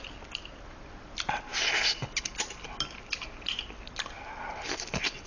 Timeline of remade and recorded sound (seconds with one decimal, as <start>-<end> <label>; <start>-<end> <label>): 0.0-5.3 recorded

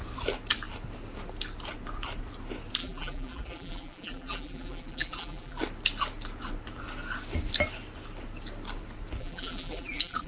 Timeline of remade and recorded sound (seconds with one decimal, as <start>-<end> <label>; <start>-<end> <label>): 0.0-2.8 recorded; 2.8-5.6 remade; 5.6-9.2 recorded; 9.2-10.3 remade

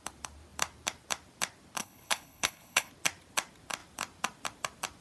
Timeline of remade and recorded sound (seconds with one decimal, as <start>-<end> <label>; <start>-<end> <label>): 0.0-1.8 recorded; 1.8-2.9 remade; 2.9-5.0 recorded

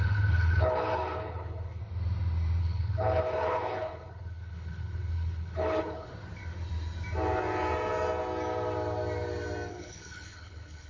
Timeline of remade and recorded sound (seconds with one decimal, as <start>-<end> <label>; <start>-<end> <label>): 0.0-1.8 remade; 1.8-2.6 recorded; 2.6-6.1 remade; 6.1-9.7 recorded; 9.7-10.9 remade

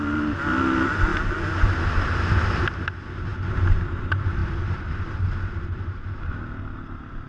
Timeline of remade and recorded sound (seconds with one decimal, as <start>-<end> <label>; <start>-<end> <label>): 0.0-4.4 recorded; 4.4-6.3 remade; 6.3-7.3 recorded